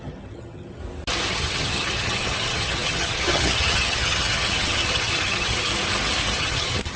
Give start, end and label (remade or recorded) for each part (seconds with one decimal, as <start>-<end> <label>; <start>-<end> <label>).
0.0-0.8 remade; 0.8-1.3 recorded; 1.3-5.7 remade; 5.7-6.4 recorded; 6.4-7.0 remade